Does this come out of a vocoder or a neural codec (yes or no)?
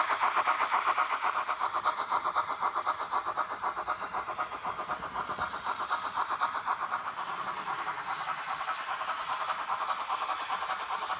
no